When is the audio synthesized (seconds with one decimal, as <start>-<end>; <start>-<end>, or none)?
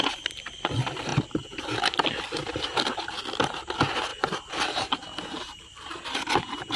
4.1-6.8